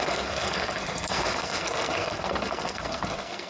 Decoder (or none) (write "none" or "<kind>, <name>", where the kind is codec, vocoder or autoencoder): codec, SNAC